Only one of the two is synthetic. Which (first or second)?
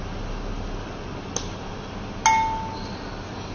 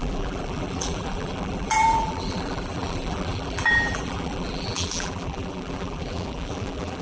second